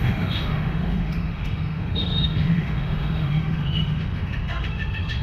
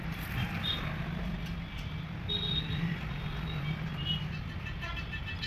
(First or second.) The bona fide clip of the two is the second